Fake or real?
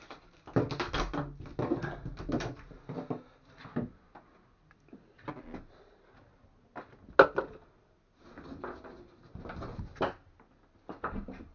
real